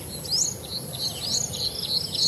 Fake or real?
real